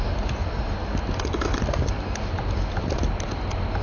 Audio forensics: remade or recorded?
recorded